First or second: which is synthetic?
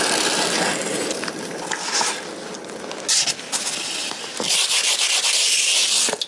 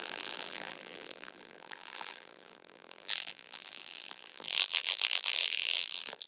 second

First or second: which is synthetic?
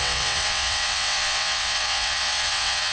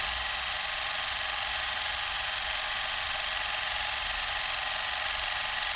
first